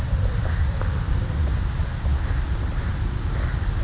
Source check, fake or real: real